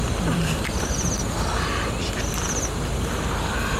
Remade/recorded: recorded